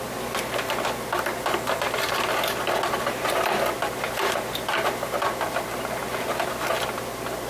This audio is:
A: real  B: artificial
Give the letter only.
A